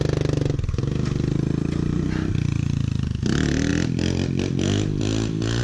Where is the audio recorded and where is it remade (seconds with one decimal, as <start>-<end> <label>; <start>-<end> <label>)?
0.0-5.6 recorded